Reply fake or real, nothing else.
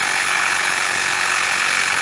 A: fake